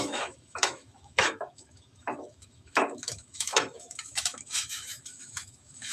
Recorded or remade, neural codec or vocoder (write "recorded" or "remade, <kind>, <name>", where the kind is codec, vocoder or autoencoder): remade, autoencoder, DAC-VAE